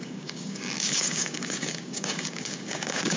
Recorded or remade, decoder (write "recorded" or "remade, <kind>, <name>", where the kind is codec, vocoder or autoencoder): remade, codec, DAC